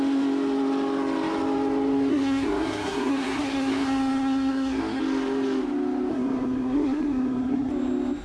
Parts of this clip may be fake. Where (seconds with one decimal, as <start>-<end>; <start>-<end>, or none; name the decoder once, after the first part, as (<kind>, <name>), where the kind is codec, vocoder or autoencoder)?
2.1-5.0 (codec, SNAC); 6.1-7.7